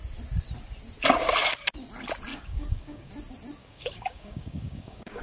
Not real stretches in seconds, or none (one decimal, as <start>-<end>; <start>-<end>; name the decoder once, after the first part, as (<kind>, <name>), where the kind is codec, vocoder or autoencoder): 2.3-3.1 (codec, DAC); 3.6-5.2

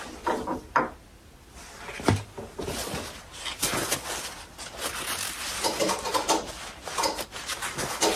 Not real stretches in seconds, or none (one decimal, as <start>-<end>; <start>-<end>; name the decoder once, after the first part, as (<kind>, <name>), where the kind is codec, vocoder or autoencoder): none

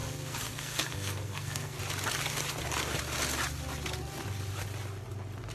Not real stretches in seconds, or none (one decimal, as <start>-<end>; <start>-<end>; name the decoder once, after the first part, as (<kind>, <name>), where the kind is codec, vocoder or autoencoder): 0.0-1.8 (codec, SNAC)

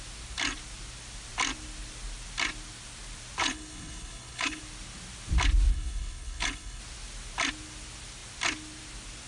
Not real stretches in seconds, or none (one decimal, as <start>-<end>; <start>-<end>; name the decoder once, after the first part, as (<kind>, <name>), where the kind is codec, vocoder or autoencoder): 3.4-4.6 (codec, HILCodec); 5.7-6.8

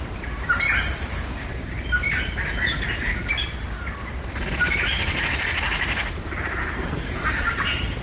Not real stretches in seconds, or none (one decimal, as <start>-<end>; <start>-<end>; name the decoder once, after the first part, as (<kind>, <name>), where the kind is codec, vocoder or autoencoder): 6.6-7.1 (codec, SNAC)